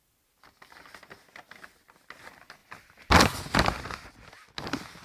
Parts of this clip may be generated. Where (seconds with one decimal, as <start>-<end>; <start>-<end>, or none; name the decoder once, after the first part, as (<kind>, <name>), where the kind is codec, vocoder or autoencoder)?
none